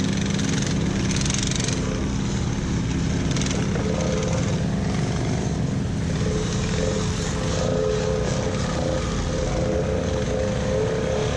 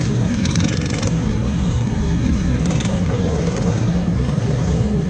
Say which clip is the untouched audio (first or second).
first